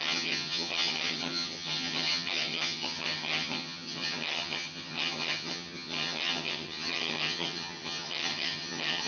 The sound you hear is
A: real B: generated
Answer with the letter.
B